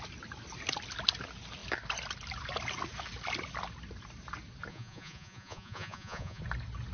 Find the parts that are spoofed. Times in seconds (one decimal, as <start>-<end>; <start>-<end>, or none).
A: 4.7-6.4